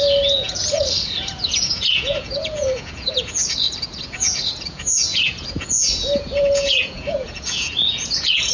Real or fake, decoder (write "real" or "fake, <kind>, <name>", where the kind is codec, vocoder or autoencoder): fake, vocoder, Vocos